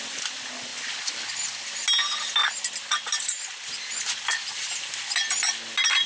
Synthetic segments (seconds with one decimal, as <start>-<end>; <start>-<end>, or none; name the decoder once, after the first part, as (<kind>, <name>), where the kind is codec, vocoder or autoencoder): none